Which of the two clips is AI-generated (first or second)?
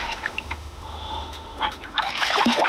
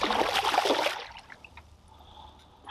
first